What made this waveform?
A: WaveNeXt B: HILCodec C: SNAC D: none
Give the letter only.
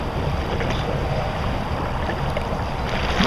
D